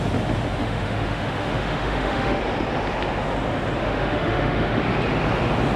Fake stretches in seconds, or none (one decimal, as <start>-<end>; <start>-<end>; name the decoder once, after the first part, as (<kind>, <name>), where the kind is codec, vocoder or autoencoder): 0.6-2.4 (autoencoder, DAC-VAE); 3.8-4.8